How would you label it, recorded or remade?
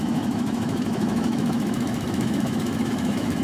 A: remade